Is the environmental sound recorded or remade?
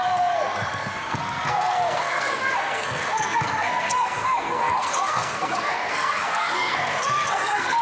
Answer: remade